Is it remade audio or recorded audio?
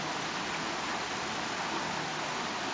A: recorded